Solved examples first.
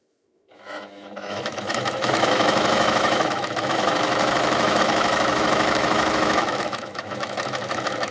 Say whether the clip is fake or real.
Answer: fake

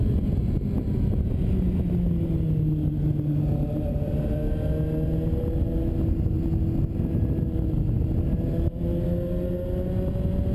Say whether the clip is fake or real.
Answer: real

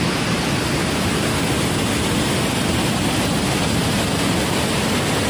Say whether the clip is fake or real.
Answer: real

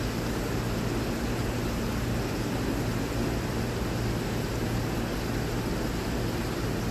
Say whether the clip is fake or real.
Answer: real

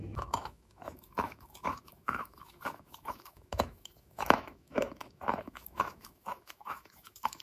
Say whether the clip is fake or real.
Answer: fake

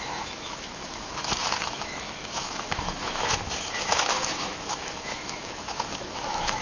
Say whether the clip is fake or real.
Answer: fake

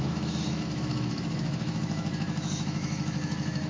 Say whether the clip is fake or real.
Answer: fake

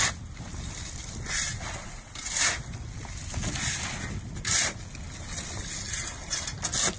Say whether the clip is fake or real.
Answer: real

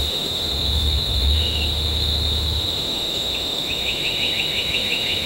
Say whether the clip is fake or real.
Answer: fake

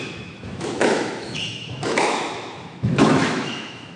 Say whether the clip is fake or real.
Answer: fake